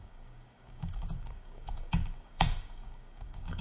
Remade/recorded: remade